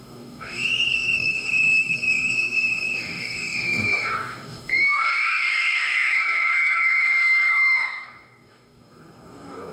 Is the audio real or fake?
fake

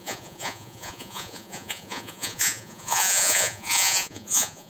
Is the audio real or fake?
fake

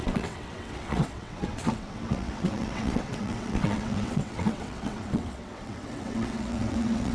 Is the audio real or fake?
fake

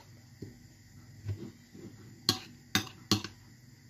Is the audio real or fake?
real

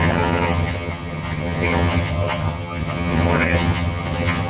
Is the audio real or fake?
fake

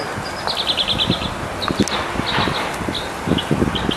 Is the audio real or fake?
real